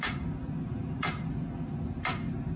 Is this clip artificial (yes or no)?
no